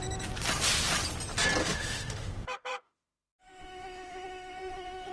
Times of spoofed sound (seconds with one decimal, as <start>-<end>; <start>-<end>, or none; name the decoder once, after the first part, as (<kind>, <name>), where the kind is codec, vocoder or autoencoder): 1.6-5.1 (autoencoder, DAC-VAE)